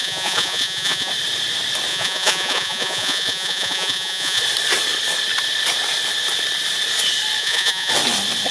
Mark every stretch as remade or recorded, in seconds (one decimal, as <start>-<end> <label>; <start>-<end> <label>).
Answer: 0.0-1.1 remade; 1.1-1.9 recorded; 1.9-4.4 remade; 4.4-7.4 recorded; 7.4-7.9 remade; 7.9-8.5 recorded